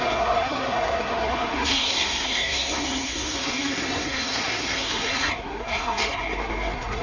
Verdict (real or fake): fake